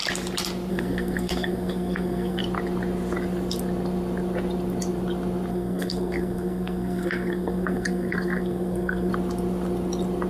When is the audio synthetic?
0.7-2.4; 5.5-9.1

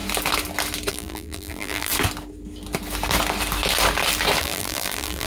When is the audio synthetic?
0.9-1.9; 4.4-5.3

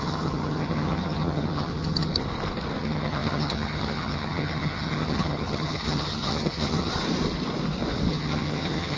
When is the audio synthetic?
0.0-2.1; 2.8-6.9; 8.1-9.0